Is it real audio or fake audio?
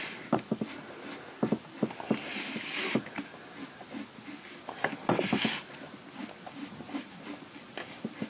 real